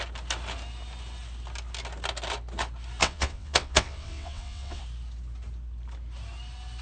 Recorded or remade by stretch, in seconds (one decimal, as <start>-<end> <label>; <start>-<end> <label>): 0.0-3.0 recorded; 3.0-4.8 remade; 4.8-6.8 recorded